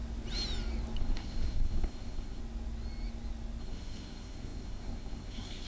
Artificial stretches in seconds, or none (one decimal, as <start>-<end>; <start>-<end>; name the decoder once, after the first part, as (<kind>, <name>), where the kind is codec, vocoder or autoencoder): 1.0-2.4 (codec, SNAC); 3.6-5.7